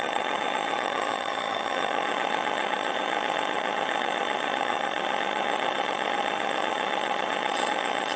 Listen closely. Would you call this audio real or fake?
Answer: fake